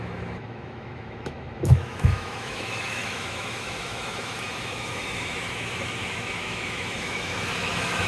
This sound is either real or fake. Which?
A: fake